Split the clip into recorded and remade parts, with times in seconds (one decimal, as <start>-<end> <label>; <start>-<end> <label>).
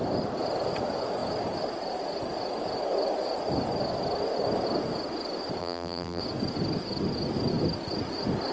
0.0-5.6 recorded; 5.6-6.2 remade; 6.2-8.5 recorded